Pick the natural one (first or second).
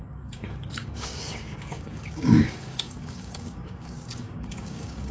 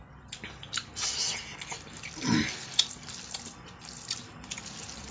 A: second